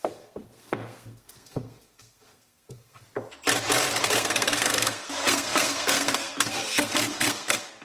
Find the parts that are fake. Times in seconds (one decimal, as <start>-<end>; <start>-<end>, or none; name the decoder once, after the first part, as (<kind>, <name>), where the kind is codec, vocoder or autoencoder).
0.0-3.0 (codec, SNAC); 4.0-7.8

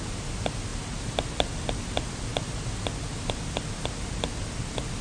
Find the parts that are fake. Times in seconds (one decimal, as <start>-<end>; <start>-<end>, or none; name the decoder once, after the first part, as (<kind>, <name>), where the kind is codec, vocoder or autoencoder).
none